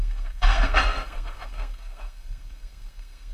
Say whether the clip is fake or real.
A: fake